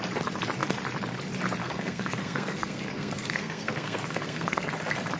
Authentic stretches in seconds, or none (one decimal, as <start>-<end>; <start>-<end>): 0.0-1.6; 4.7-5.2